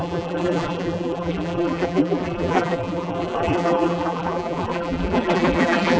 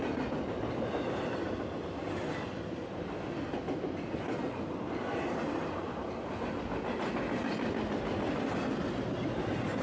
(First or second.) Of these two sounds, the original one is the second